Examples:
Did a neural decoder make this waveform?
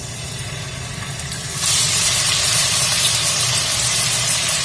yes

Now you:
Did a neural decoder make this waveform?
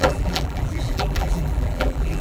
yes